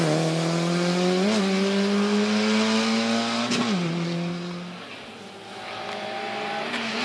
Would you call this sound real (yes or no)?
yes